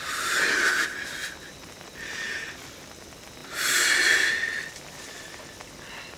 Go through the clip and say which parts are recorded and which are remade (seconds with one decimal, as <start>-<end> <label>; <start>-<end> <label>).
0.0-6.2 recorded